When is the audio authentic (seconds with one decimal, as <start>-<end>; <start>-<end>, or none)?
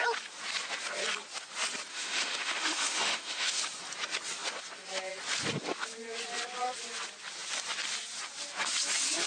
0.0-1.9; 3.6-9.3